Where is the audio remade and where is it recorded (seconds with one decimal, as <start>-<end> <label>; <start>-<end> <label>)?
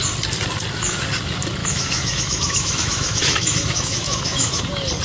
0.0-1.6 recorded; 1.6-4.6 remade; 4.6-5.0 recorded